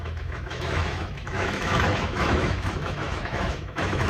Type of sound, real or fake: fake